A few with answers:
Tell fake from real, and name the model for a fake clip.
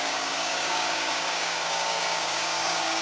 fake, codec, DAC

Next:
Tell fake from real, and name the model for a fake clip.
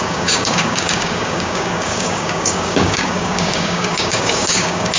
fake, codec, DAC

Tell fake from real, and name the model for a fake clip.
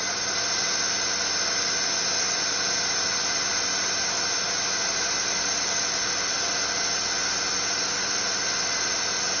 real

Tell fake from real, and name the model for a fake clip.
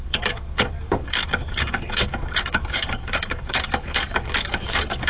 fake, codec, DAC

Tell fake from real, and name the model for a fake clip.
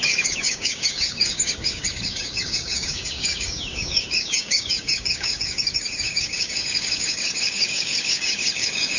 fake, codec, DAC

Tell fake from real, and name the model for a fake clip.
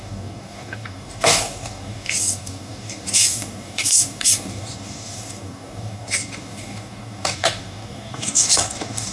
fake, codec, DAC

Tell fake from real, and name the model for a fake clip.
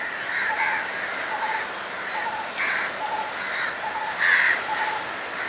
real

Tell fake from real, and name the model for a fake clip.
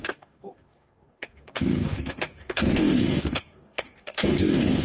fake, codec, DAC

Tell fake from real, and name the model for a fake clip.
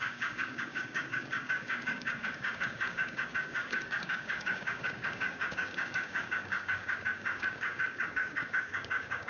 fake, codec, DAC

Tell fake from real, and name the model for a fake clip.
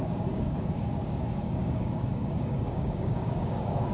fake, codec, DAC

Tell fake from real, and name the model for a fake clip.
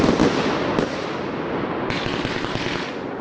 real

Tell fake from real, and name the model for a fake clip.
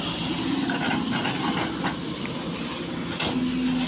real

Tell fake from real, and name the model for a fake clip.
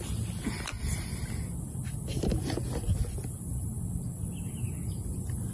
real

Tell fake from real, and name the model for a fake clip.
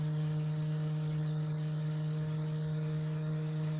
fake, codec, DAC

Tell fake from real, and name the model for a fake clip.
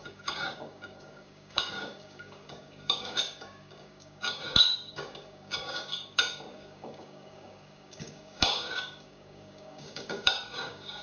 fake, codec, DAC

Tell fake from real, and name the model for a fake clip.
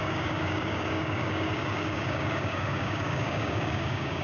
fake, codec, DAC